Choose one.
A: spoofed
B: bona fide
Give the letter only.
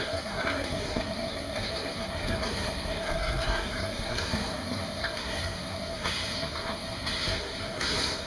A